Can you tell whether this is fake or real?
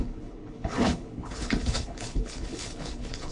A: fake